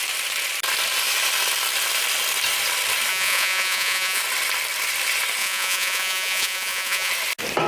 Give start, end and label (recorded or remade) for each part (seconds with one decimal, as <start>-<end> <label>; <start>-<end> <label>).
0.0-3.1 recorded; 3.1-4.2 remade; 4.2-5.4 recorded; 5.4-7.1 remade; 7.1-7.7 recorded